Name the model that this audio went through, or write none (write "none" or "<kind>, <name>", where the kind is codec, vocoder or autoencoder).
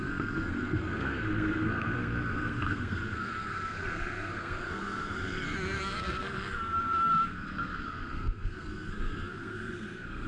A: codec, SNAC